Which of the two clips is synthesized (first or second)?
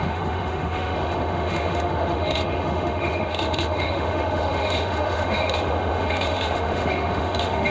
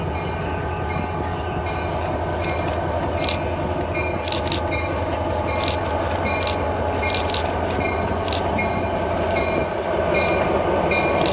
first